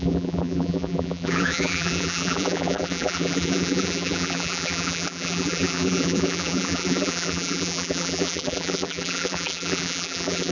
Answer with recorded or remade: remade